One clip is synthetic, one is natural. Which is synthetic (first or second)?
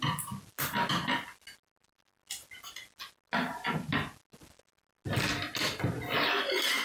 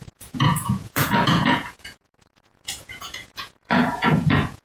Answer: second